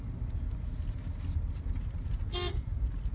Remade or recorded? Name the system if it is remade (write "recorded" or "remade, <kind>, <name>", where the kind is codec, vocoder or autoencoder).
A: recorded